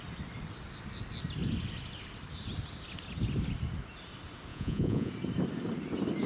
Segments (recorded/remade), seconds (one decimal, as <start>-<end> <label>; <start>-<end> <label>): 0.0-4.5 recorded; 4.5-5.1 remade; 5.1-6.3 recorded